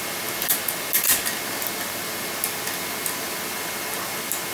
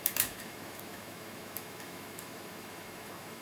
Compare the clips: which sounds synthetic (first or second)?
second